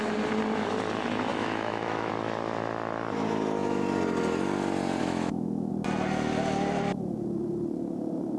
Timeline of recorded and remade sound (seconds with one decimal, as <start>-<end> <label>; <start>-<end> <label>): 0.0-1.3 recorded; 1.3-2.1 remade; 2.1-5.0 recorded; 5.0-5.7 remade; 5.7-8.4 recorded